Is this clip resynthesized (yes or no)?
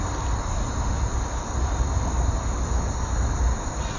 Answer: no